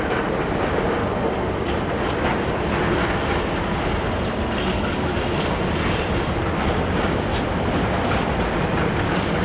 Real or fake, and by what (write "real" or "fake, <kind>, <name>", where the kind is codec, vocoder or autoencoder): real